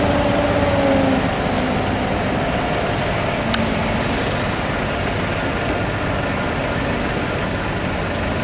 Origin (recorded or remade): recorded